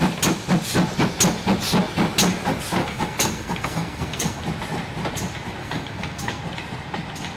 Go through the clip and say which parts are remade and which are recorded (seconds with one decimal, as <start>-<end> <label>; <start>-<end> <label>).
0.0-2.8 recorded; 2.8-4.4 remade; 4.4-5.6 recorded; 5.6-6.4 remade; 6.4-7.4 recorded